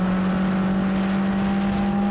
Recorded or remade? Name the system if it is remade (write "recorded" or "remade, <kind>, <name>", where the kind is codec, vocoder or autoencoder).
recorded